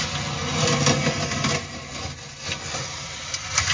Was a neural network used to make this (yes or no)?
no